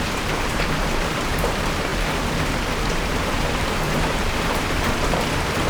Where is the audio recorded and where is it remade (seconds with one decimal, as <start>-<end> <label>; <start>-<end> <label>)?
0.0-1.9 remade; 1.9-2.9 recorded; 2.9-5.7 remade